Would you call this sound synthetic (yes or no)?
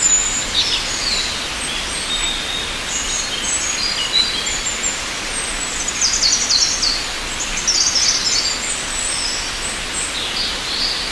no